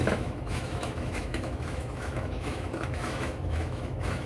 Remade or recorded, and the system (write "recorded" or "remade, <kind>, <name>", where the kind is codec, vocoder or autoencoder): remade, autoencoder, DAC-VAE